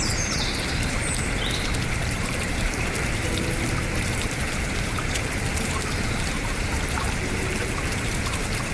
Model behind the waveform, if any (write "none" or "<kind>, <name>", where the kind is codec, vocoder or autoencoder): vocoder, BigVGAN v2